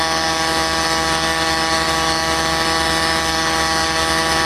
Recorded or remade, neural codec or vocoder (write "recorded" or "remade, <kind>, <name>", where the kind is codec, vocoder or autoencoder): remade, codec, DAC